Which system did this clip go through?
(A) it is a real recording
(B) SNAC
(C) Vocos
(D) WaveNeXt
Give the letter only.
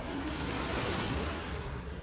B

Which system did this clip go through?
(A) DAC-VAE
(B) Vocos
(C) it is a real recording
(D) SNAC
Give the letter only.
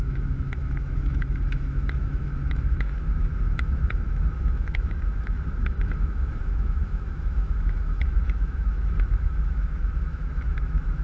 A